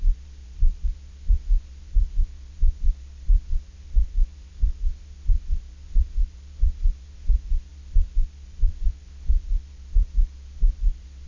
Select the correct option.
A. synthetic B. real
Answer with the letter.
A